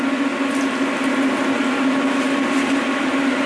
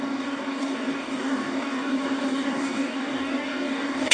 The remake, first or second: second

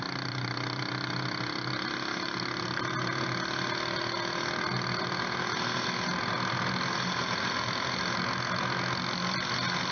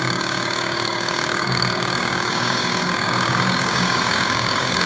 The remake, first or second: second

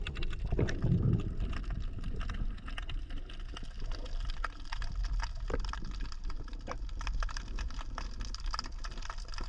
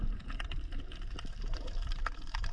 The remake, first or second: second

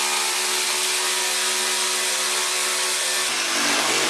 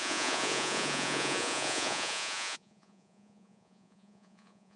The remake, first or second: second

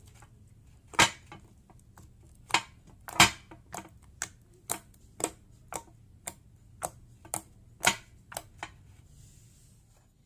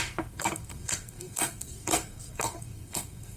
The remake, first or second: second